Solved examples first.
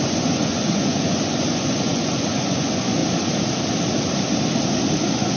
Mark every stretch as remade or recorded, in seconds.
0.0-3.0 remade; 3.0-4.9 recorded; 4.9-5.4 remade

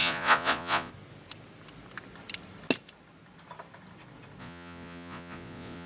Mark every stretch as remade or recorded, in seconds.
0.0-0.9 remade; 0.9-4.4 recorded; 4.4-5.9 remade

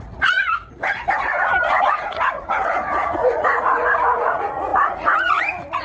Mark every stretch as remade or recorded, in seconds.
0.0-5.8 remade

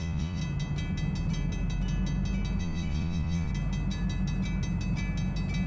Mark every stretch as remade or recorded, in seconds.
0.0-0.4 remade; 0.4-2.6 recorded; 2.6-3.5 remade; 3.5-5.7 recorded

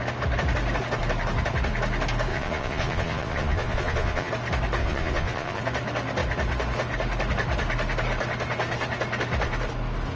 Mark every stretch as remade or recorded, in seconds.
0.0-2.3 recorded; 2.3-4.3 remade; 4.3-4.8 recorded; 4.8-5.6 remade; 5.6-10.2 recorded

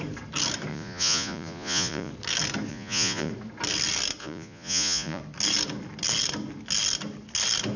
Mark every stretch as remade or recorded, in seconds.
0.0-0.7 recorded; 0.7-2.1 remade; 2.1-2.7 recorded; 2.7-3.3 remade; 3.3-4.2 recorded; 4.2-5.2 remade; 5.2-7.8 recorded

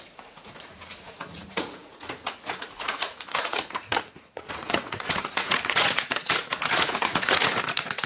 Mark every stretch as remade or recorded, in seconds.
0.0-8.1 remade